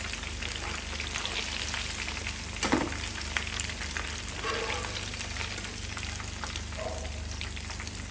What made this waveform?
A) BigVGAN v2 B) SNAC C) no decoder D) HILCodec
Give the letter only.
C